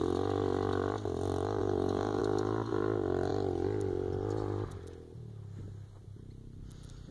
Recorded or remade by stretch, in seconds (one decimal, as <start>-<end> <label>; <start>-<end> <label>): 0.0-1.6 recorded; 1.6-2.2 remade; 2.2-7.1 recorded